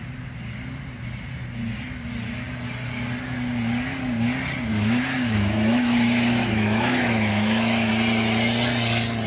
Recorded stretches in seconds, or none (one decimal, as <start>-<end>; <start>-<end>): 0.0-4.7; 7.9-9.3